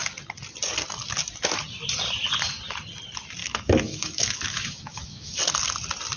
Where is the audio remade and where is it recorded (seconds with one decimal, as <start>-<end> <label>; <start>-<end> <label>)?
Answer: 0.0-3.4 recorded; 3.4-5.4 remade; 5.4-6.2 recorded